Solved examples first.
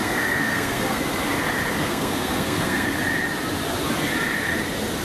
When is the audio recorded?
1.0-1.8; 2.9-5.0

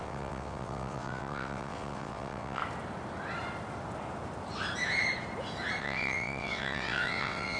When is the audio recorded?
2.6-5.8

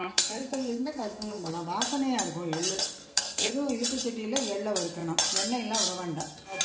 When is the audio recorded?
1.5-3.0; 3.5-6.6

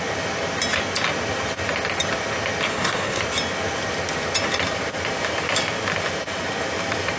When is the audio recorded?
0.0-2.7; 3.2-7.2

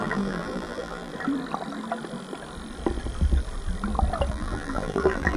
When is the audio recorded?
1.1-4.3

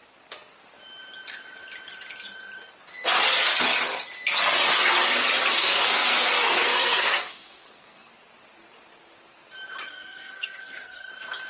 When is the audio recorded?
0.0-5.6; 8.1-9.9; 11.1-11.5

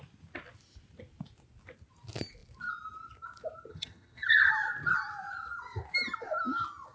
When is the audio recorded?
0.0-3.7; 4.5-6.9